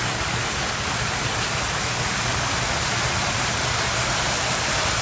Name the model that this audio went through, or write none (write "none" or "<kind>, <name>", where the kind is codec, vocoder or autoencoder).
none